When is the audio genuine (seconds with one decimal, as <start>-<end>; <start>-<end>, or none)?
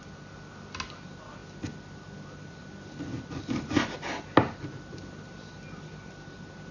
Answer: 0.0-6.7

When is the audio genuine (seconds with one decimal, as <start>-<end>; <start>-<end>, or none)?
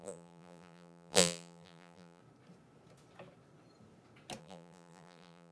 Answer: 2.2-4.4